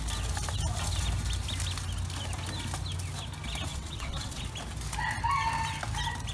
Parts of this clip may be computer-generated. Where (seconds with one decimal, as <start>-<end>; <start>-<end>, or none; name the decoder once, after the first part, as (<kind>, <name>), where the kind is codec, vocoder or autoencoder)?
3.7-4.4 (vocoder, WaveNeXt)